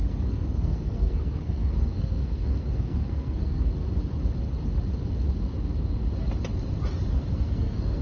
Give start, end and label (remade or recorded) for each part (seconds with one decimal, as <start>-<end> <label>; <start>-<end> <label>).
0.0-3.7 remade; 3.7-7.1 recorded; 7.1-8.0 remade